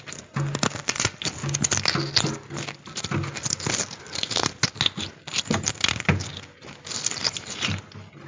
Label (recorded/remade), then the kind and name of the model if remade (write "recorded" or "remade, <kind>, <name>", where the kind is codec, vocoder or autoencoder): recorded